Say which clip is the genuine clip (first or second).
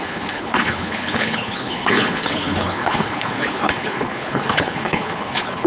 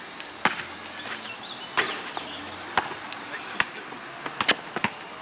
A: second